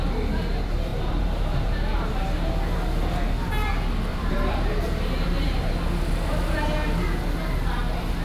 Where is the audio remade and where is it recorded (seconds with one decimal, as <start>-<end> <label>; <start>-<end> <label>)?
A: 0.0-0.9 recorded; 0.9-2.1 remade; 2.1-4.1 recorded; 4.1-5.7 remade; 5.7-8.2 recorded